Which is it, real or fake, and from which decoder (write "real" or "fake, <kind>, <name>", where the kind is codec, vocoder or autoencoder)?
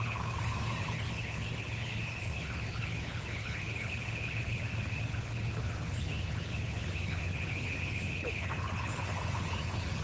fake, codec, HILCodec